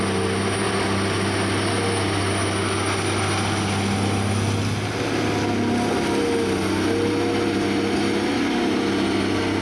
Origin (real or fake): real